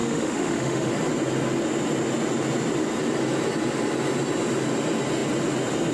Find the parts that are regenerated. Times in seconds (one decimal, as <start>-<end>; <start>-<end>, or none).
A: 0.0-0.9